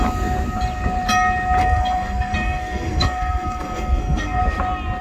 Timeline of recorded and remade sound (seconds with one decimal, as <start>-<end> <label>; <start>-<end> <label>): 0.0-1.6 recorded; 1.6-4.4 remade; 4.4-5.0 recorded